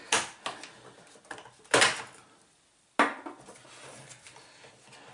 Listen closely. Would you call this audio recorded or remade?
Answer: recorded